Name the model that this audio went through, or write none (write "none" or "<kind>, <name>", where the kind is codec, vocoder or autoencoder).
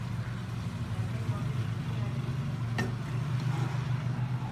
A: none